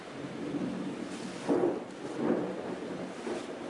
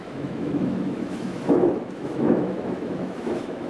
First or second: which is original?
first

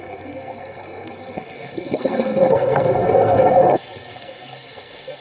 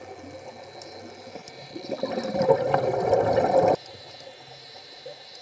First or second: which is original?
second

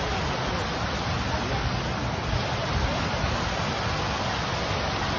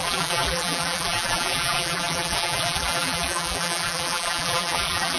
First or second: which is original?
first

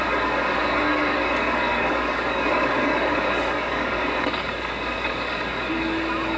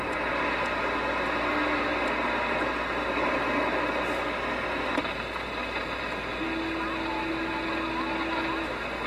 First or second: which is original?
second